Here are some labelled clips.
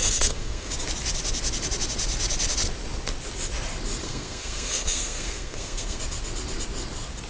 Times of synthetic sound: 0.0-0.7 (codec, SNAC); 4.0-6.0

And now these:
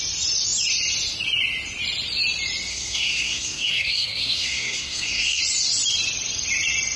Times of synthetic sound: 2.7-5.4 (codec, SNAC)

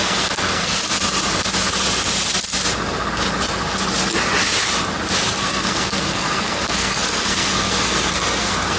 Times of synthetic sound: 0.0-0.8 (codec, SNAC); 5.4-8.8